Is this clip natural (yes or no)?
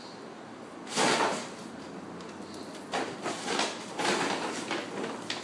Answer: yes